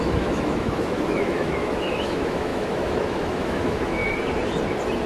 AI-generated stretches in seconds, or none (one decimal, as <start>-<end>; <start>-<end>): 0.0-4.0

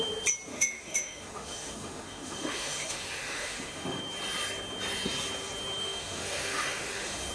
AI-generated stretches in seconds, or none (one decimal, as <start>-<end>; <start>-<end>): 0.5-4.0; 5.8-7.3

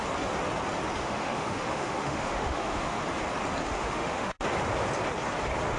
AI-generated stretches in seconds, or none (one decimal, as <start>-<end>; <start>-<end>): 1.0-3.0; 3.6-4.4

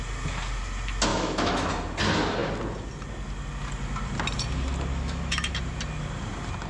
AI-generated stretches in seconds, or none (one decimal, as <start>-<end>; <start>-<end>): 1.1-1.7; 4.9-5.5

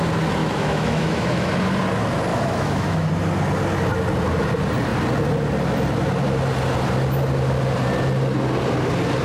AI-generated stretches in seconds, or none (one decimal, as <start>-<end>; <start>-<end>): 0.4-1.5; 2.3-3.1

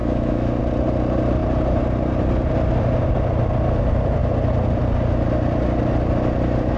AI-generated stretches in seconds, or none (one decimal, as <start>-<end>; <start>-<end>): 0.0-0.6

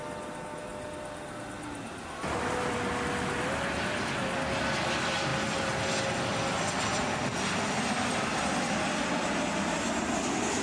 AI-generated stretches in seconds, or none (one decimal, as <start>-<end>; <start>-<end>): none

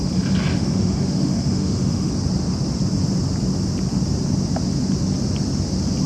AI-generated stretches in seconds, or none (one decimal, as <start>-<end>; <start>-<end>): 0.5-2.1